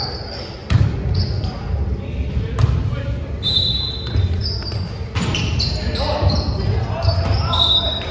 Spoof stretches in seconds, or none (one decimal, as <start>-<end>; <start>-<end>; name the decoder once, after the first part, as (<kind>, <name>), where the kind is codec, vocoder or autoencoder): 0.6-1.5 (vocoder, BigVGAN v2)